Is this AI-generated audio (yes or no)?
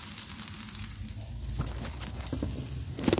no